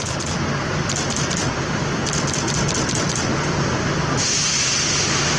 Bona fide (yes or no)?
yes